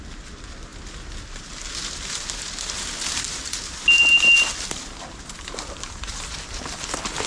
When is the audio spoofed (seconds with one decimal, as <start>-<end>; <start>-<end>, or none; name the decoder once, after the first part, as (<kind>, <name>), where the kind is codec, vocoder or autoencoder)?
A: none